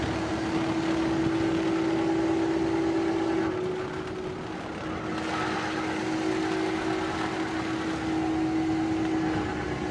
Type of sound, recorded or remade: recorded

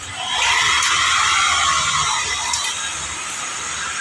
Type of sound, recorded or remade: remade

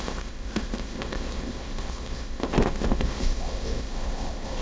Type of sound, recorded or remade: remade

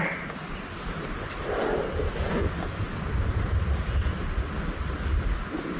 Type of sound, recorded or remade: recorded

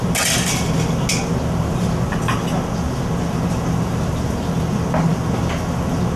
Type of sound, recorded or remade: recorded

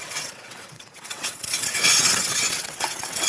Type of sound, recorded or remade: remade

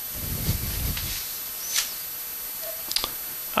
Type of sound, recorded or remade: recorded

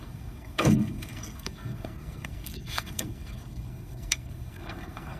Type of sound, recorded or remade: remade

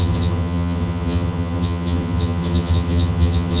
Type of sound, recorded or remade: remade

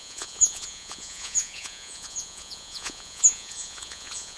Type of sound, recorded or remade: remade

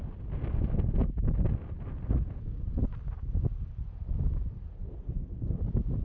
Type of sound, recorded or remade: recorded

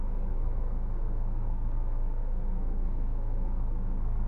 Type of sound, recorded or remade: remade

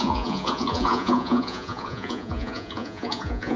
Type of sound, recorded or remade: remade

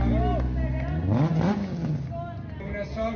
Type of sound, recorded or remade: recorded